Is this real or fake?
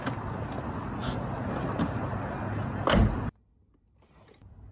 real